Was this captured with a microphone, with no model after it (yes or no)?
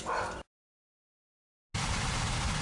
yes